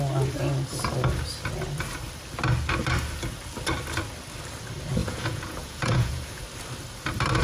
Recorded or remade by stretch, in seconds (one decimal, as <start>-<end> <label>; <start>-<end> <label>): 0.0-5.0 recorded; 5.0-6.4 remade; 6.4-7.4 recorded